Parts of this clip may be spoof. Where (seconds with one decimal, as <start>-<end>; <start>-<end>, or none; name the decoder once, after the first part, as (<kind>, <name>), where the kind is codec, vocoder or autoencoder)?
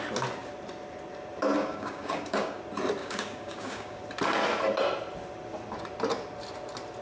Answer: 1.6-2.6 (codec, DAC); 3.0-4.0